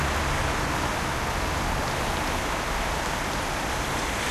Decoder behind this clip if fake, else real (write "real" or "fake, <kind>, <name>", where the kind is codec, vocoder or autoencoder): real